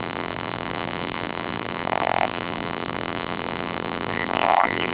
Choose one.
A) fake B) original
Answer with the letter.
A